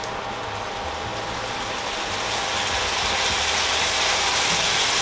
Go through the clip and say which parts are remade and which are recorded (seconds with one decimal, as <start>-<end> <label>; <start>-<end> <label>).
0.0-5.0 recorded